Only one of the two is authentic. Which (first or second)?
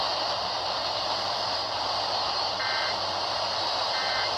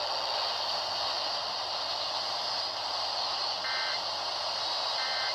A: second